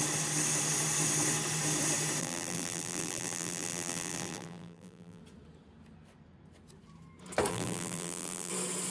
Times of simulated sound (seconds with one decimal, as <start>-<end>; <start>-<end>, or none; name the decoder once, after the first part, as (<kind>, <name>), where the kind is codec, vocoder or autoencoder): 2.2-5.2 (vocoder, BigVGAN v2); 7.5-8.5